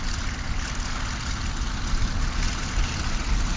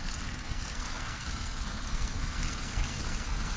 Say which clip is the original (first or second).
first